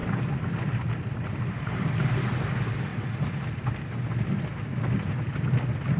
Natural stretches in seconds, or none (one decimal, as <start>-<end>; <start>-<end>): 0.0-6.0